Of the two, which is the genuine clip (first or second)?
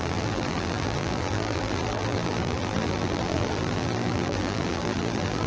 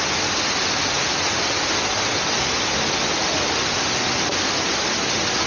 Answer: second